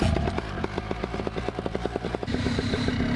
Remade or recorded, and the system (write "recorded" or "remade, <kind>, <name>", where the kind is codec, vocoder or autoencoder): recorded